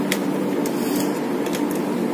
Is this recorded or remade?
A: recorded